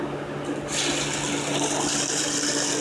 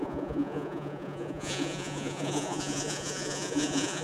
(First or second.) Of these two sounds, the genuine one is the first